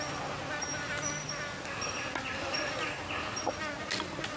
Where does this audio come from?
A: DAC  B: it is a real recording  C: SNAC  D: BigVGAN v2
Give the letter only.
B